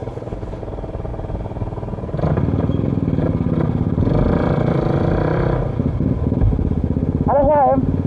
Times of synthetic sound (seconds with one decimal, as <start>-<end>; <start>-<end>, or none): 0.0-0.6